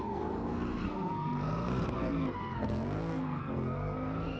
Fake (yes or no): yes